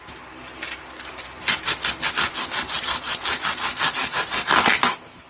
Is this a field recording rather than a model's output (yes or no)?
yes